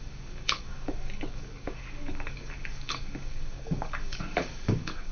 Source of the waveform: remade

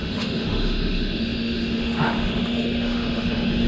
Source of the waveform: remade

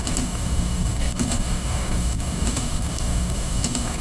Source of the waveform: remade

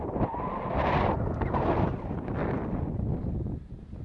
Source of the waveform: recorded